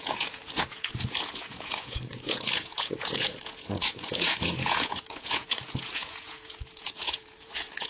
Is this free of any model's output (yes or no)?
no